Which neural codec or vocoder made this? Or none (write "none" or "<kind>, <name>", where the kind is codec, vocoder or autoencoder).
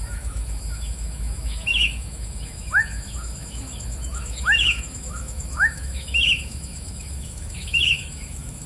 autoencoder, DAC-VAE